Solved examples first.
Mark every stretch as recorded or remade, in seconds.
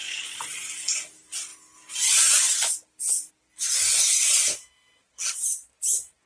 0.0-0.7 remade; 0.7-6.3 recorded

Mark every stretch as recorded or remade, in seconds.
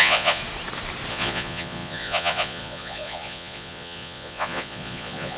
0.0-0.4 remade; 0.4-1.1 recorded; 1.1-5.4 remade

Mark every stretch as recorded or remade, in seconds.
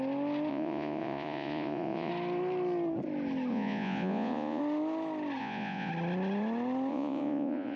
0.0-0.5 recorded; 0.5-2.1 remade; 2.1-3.5 recorded; 3.5-4.6 remade; 4.6-5.4 recorded; 5.4-5.9 remade; 5.9-6.9 recorded; 6.9-7.8 remade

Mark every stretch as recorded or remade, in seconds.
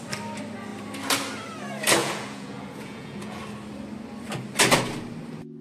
0.0-2.0 recorded; 2.0-3.4 remade; 3.4-5.6 recorded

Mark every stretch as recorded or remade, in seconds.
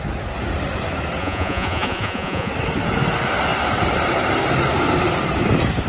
0.0-1.2 recorded; 1.2-2.5 remade; 2.5-5.9 recorded